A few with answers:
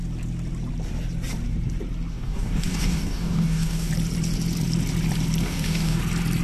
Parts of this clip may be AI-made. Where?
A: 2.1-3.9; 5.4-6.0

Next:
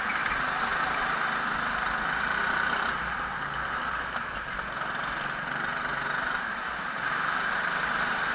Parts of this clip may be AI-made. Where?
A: none

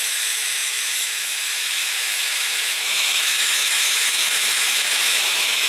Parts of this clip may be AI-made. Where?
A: 0.0-5.7

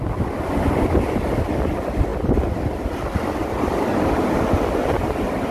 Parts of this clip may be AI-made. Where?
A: none